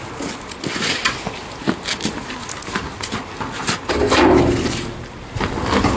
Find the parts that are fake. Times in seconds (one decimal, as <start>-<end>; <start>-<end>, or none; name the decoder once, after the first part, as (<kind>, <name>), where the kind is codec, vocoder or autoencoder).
none